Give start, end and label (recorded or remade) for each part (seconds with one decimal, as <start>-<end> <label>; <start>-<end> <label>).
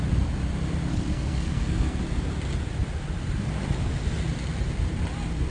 0.0-0.9 recorded; 0.9-2.0 remade; 2.0-5.5 recorded